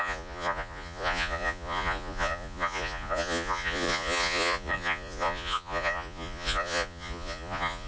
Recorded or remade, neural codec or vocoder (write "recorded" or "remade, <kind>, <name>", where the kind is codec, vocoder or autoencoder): remade, vocoder, Vocos